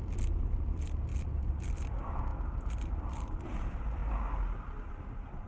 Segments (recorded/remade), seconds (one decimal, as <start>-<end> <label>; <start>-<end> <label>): 0.0-2.3 remade; 2.3-2.8 recorded; 2.8-4.0 remade; 4.0-4.8 recorded; 4.8-5.5 remade